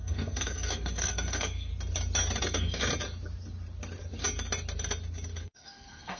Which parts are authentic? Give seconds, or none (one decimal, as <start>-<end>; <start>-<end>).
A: 1.7-2.4; 2.9-5.4